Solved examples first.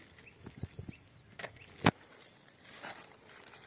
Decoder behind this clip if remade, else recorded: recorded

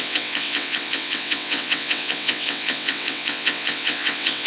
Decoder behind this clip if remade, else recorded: remade, vocoder, WaveNeXt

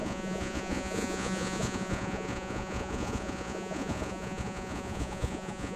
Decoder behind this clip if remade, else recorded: remade, vocoder, Vocos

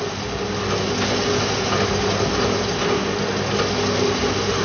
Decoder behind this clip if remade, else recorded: recorded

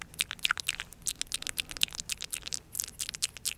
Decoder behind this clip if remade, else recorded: recorded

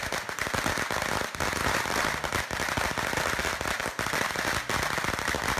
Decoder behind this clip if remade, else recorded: recorded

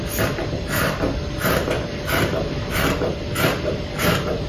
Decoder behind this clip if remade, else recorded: recorded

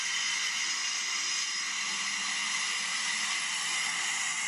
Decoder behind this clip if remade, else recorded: recorded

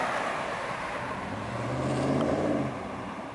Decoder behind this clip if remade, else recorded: remade, vocoder, BigVGAN v2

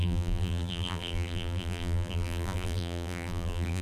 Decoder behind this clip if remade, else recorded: remade, vocoder, BigVGAN v2